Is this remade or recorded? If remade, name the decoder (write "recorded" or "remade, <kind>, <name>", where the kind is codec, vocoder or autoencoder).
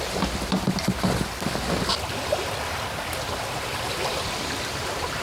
remade, vocoder, BigVGAN v2